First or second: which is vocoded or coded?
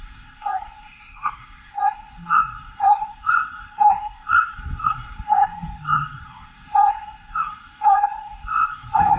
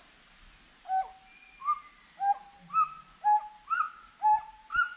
first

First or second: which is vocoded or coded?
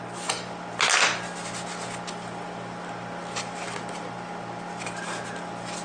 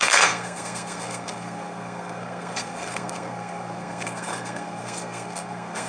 second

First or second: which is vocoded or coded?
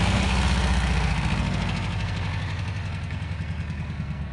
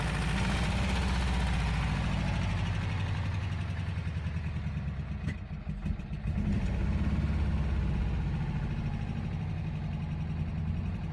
first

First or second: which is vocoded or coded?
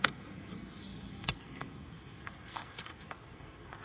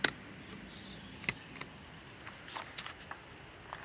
first